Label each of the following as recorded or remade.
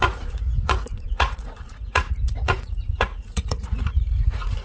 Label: remade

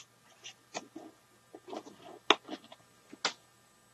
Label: recorded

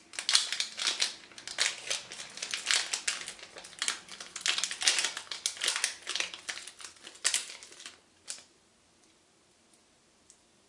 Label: recorded